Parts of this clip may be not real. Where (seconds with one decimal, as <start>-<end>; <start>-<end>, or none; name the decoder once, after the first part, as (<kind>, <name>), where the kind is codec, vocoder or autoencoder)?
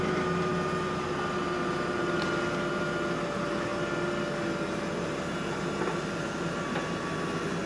none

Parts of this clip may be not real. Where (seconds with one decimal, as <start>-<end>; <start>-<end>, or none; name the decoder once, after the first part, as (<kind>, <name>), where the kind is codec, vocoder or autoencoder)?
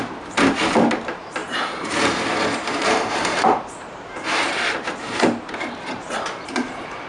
0.0-7.1 (vocoder, BigVGAN v2)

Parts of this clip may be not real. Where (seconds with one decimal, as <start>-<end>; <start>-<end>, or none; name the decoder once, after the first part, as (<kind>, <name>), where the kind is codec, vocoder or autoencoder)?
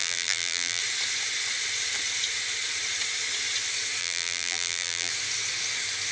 0.0-0.8 (vocoder, BigVGAN v2); 4.0-5.1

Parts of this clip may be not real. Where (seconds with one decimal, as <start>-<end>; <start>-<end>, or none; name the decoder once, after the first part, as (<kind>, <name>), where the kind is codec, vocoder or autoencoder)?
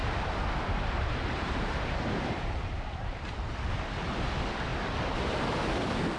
0.0-3.7 (vocoder, BigVGAN v2)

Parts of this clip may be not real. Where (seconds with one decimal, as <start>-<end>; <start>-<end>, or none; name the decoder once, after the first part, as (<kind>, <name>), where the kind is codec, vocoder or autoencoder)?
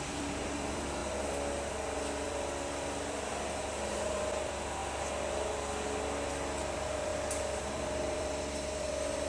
0.0-4.8 (vocoder, BigVGAN v2); 6.6-7.1; 7.6-9.3